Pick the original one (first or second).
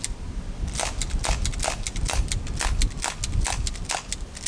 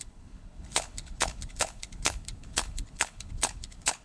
first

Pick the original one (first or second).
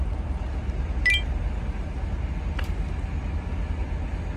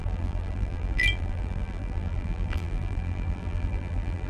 first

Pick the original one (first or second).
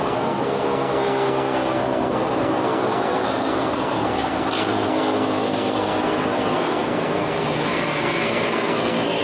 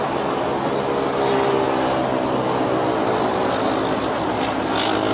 second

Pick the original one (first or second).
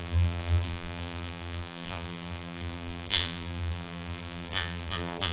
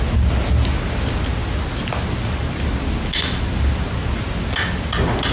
second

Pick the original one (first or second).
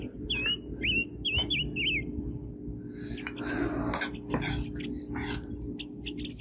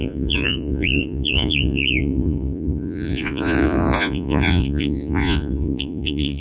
first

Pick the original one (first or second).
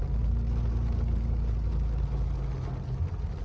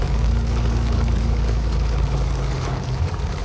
first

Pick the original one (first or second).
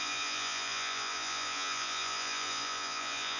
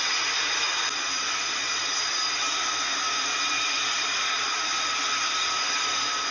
second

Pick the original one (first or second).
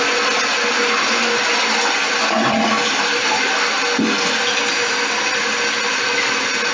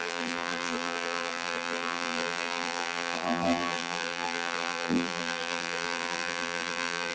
first